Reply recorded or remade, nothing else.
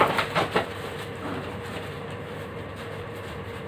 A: remade